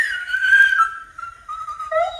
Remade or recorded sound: remade